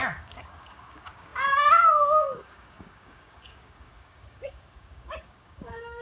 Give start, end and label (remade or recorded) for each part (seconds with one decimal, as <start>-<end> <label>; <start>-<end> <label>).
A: 0.0-6.0 remade